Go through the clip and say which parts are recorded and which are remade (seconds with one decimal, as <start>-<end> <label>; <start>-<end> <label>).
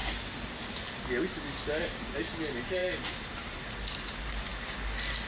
0.0-5.3 recorded